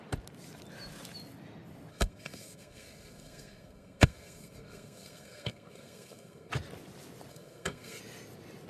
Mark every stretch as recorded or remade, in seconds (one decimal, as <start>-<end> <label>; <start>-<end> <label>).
0.0-1.9 recorded; 1.9-6.5 remade; 6.5-7.3 recorded; 7.3-8.0 remade; 8.0-8.7 recorded